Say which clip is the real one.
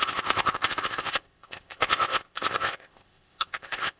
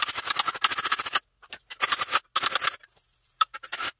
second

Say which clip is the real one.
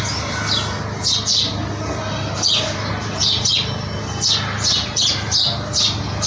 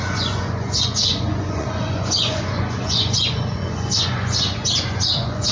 first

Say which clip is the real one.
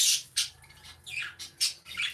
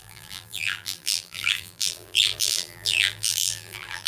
first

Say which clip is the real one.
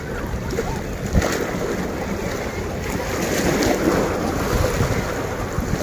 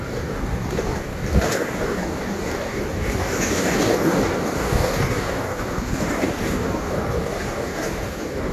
first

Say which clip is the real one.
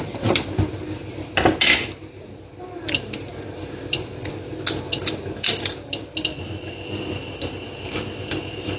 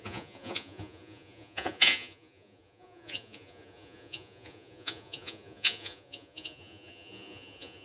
first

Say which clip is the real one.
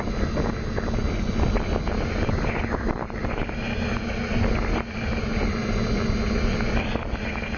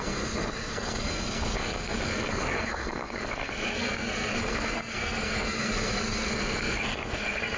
first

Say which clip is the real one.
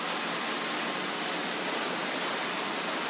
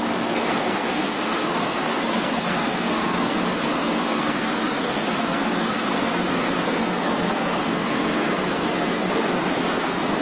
first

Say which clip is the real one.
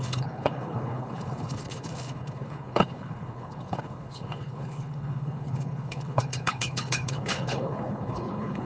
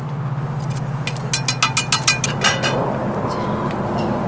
second